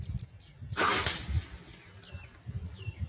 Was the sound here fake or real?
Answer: real